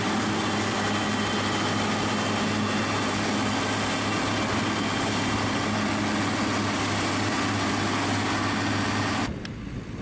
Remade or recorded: recorded